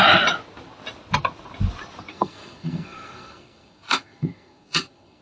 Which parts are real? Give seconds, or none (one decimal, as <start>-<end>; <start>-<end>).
0.0-2.1

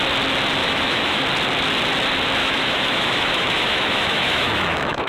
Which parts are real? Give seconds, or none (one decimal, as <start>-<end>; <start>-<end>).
0.0-0.6; 1.2-2.4

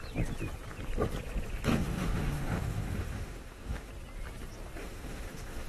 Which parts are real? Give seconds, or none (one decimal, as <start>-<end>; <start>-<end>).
0.0-1.7; 3.9-4.8

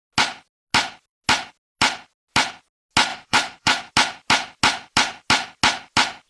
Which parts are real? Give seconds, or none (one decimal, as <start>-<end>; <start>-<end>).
0.0-3.1; 3.9-6.3